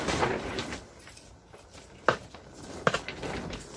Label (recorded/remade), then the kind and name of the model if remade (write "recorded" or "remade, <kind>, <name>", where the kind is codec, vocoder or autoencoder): recorded